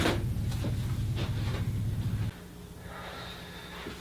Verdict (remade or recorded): recorded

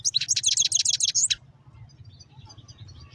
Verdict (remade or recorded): recorded